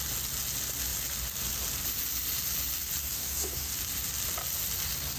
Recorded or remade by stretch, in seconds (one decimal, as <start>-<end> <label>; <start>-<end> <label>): 0.0-3.0 recorded; 3.0-3.7 remade; 3.7-5.2 recorded